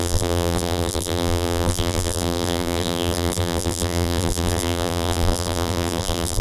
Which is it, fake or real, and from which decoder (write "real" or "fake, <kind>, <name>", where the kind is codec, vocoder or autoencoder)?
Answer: fake, vocoder, BigVGAN v2